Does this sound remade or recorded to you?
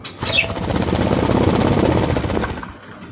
recorded